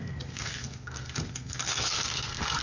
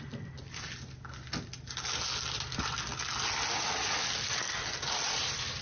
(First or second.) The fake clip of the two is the first